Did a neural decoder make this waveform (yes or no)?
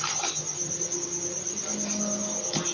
no